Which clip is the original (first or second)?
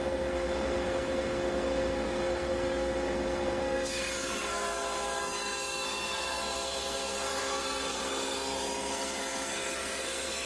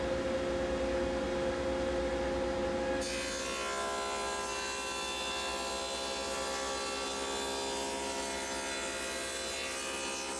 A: second